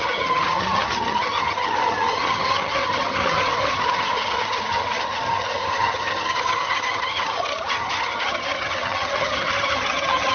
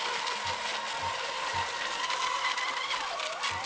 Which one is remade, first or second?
first